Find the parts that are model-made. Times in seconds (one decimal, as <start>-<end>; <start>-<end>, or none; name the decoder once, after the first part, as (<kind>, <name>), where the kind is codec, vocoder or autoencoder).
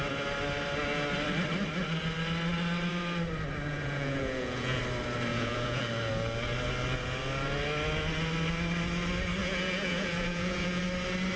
3.7-4.8 (vocoder, Vocos); 5.3-5.8; 9.4-10.8